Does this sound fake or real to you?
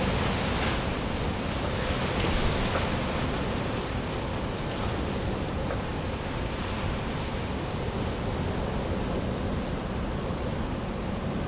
real